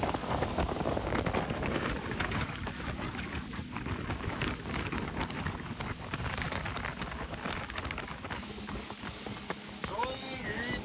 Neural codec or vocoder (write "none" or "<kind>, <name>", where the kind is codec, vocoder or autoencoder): codec, DAC